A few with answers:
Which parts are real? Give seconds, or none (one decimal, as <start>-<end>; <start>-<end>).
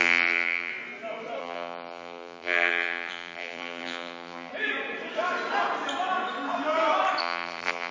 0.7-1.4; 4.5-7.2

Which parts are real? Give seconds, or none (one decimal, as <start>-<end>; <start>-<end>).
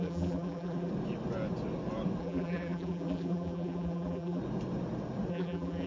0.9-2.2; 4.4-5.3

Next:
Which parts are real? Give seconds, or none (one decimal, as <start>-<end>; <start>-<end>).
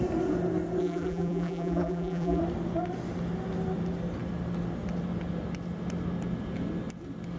0.0-0.8; 2.4-7.4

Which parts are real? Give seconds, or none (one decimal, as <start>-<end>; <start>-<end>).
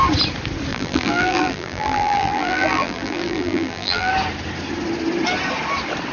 0.0-0.7; 4.1-6.1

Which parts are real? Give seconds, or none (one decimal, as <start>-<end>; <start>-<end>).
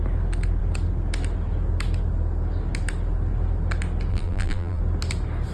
0.0-4.1; 4.8-5.5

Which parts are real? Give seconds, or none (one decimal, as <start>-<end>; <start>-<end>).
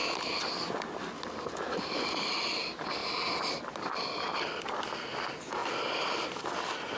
0.0-3.0; 4.6-5.6; 6.4-7.0